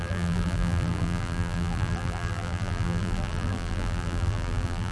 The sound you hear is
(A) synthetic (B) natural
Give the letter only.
A